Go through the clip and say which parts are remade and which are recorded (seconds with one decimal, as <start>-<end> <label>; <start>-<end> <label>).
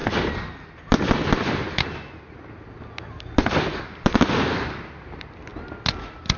0.0-6.4 recorded